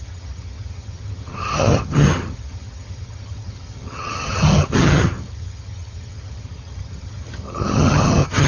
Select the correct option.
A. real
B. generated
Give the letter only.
B